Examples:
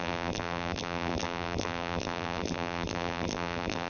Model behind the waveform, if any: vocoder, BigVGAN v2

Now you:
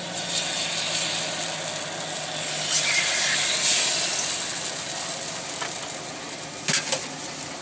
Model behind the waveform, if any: none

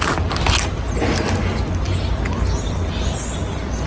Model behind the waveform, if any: none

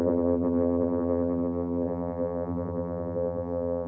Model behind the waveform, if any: vocoder, BigVGAN v2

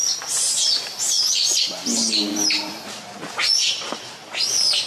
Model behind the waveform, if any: none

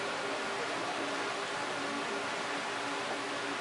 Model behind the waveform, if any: none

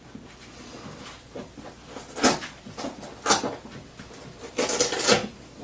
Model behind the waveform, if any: none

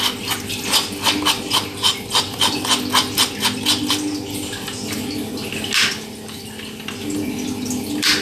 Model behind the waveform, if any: none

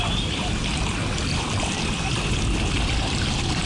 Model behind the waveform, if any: vocoder, BigVGAN v2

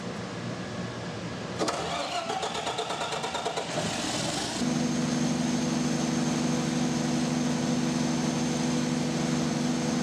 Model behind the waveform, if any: none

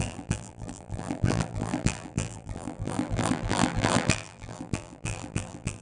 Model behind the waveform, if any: vocoder, BigVGAN v2